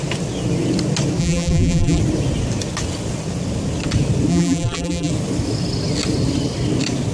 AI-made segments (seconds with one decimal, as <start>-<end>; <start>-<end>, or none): 1.2-2.0; 4.3-5.1